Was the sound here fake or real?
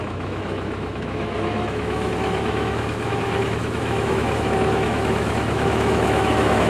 fake